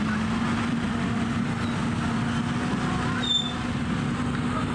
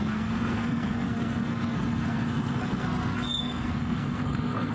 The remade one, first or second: second